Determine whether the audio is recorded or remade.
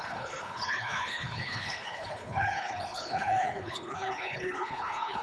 remade